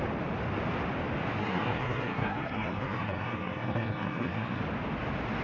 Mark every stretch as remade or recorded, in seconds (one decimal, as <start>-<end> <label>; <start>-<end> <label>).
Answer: 0.0-1.4 recorded; 1.4-4.6 remade; 4.6-5.4 recorded

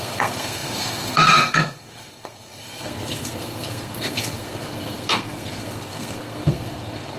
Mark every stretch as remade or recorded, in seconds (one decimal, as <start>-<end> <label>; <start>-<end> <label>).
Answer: 0.0-7.2 remade